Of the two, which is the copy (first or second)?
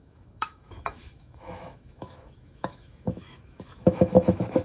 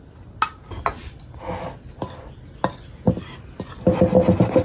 first